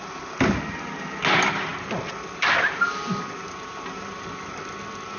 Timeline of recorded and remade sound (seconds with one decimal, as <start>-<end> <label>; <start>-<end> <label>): 0.0-5.2 recorded